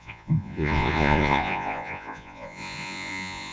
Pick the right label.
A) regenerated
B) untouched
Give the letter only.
A